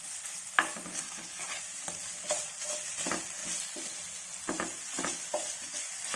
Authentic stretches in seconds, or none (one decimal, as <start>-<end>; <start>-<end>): 0.0-0.9; 1.6-6.2